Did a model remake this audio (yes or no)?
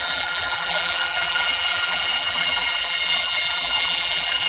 yes